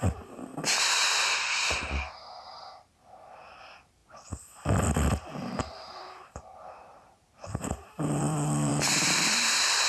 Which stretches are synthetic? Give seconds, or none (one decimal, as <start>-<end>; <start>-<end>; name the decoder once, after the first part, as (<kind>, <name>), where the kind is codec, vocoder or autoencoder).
0.0-0.5 (vocoder, BigVGAN v2); 3.6-9.9